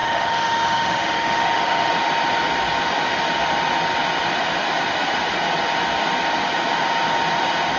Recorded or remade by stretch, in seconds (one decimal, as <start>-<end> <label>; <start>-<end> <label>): 0.0-1.9 remade; 1.9-7.8 recorded